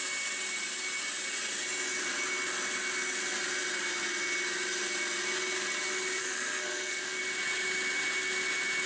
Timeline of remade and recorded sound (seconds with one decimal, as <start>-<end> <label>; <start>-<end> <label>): 0.0-6.2 recorded; 6.2-7.2 remade; 7.2-8.9 recorded